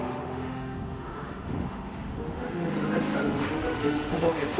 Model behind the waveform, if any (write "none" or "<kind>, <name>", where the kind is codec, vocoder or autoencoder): autoencoder, DAC-VAE